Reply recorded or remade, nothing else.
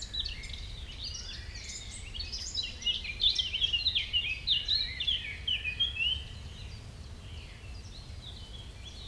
recorded